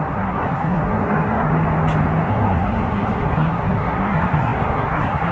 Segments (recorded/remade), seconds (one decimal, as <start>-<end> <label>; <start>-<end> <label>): 0.0-1.5 remade; 1.5-2.3 recorded; 2.3-5.3 remade